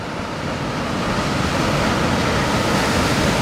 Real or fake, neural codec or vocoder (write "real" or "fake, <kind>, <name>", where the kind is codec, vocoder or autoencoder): real